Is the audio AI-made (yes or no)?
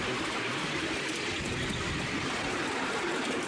no